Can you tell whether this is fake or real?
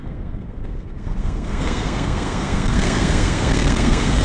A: fake